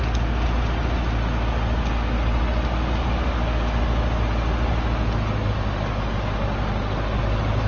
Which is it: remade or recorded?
recorded